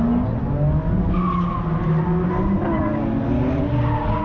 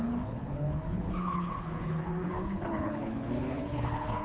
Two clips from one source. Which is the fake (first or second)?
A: second